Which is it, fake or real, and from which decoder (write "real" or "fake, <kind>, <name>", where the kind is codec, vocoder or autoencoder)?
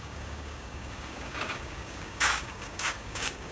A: fake, codec, DAC